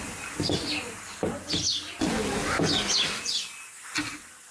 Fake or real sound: real